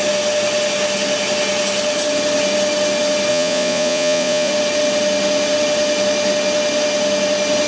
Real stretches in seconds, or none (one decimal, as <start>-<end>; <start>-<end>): 0.0-3.3; 4.5-7.7